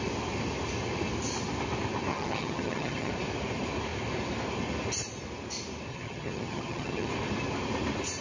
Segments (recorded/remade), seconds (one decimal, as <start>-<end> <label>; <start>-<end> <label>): 0.0-2.1 recorded; 2.1-3.1 remade; 3.1-5.9 recorded; 5.9-7.1 remade; 7.1-8.2 recorded